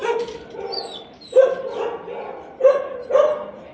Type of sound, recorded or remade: recorded